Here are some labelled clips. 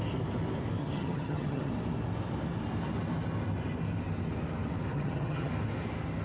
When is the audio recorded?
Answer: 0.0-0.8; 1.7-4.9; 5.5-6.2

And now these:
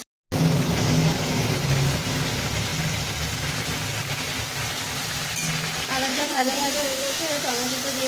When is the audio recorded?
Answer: 0.0-6.1; 7.2-8.1

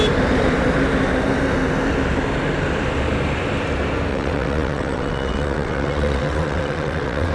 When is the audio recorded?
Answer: 0.0-4.1

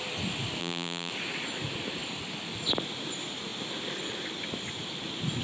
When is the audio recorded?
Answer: 0.0-0.6; 1.1-5.4

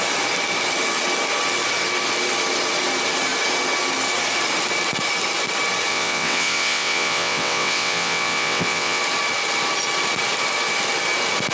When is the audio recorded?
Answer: 0.0-5.9; 9.0-11.5

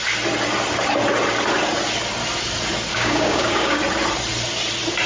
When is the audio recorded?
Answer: 0.0-2.9; 3.8-5.1

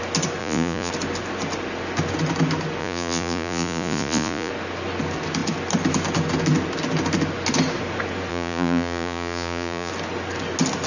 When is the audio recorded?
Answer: 0.0-0.4; 0.9-2.8; 4.5-8.3; 9.9-10.9

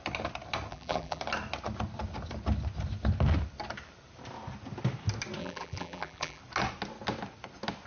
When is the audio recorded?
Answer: 0.0-0.7; 1.2-5.4; 6.4-7.9